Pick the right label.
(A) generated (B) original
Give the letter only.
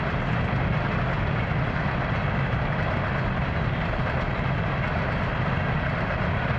B